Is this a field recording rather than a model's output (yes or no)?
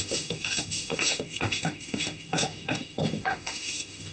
no